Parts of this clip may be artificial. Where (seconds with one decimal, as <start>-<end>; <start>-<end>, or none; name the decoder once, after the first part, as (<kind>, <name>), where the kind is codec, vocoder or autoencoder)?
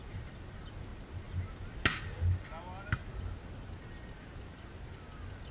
none